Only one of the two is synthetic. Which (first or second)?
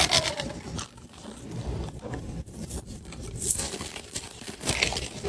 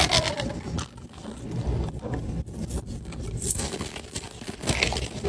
first